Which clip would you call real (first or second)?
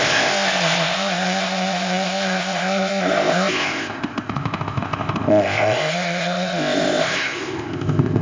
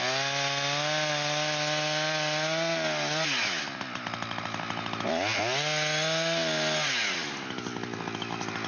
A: second